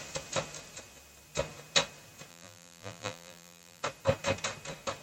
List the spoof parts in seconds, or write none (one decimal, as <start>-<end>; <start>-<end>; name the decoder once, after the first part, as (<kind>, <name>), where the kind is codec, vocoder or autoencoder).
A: 2.3-3.8 (vocoder, BigVGAN v2)